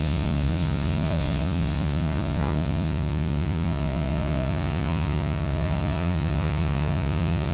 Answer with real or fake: fake